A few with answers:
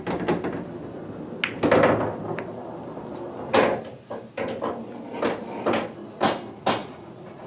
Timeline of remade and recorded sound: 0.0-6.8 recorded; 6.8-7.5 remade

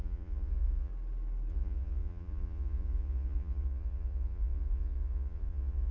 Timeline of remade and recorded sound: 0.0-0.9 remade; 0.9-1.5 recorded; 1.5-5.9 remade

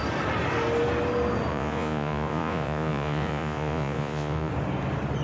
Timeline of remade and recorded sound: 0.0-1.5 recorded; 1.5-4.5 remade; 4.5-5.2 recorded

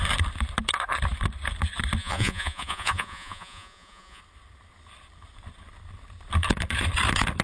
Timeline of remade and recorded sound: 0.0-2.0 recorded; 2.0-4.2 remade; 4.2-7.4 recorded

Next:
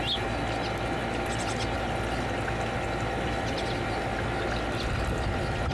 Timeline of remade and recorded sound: 0.0-5.7 recorded

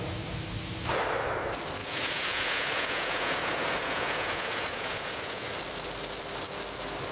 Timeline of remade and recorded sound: 0.0-1.8 recorded; 1.8-5.6 remade; 5.6-7.1 recorded

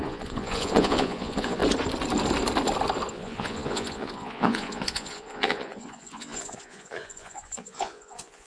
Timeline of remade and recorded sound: 0.0-1.6 remade; 1.6-3.1 recorded; 3.1-8.5 remade

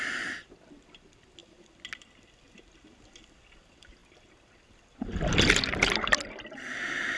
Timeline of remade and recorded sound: 0.0-7.2 recorded